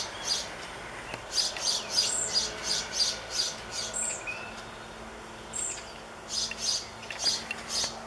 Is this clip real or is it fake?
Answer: real